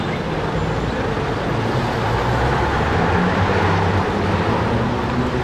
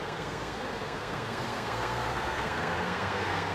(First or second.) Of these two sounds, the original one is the first